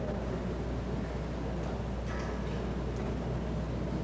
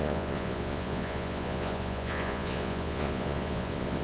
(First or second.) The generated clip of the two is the second